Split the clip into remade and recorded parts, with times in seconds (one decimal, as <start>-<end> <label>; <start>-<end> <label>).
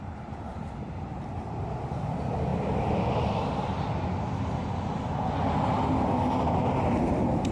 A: 0.0-0.5 recorded; 0.5-1.6 remade; 1.6-7.5 recorded